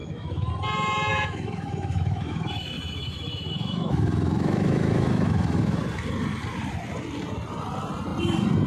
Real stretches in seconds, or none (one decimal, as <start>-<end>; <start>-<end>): 0.5-1.1; 5.8-8.7